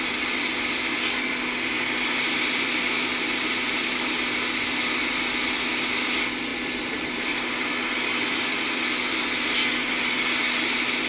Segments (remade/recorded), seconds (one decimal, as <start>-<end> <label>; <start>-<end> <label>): 0.0-11.1 recorded

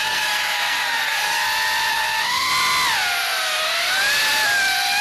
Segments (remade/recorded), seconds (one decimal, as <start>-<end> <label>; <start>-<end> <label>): 0.0-1.4 remade; 1.4-1.9 recorded; 1.9-2.5 remade; 2.5-5.0 recorded